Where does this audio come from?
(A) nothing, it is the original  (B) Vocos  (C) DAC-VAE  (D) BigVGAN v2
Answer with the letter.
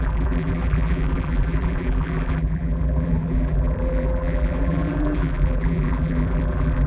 D